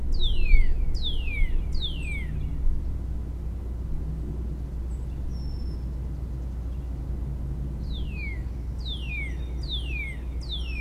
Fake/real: real